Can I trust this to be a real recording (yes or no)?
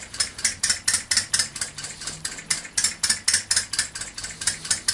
yes